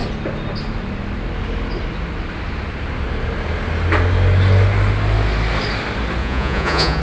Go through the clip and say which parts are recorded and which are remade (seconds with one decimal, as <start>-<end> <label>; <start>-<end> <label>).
0.0-6.2 recorded; 6.2-7.0 remade